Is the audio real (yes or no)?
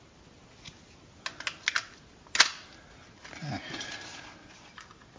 yes